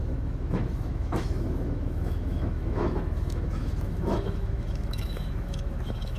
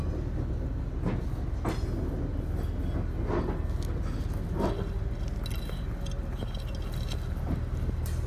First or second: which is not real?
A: first